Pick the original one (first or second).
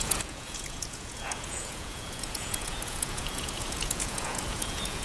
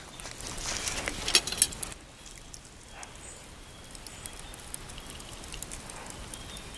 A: second